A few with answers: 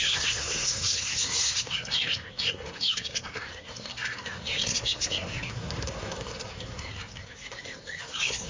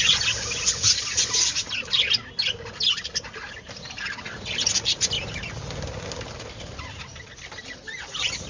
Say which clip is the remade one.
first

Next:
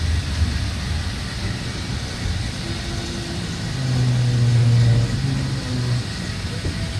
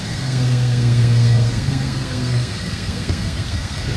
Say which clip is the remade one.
second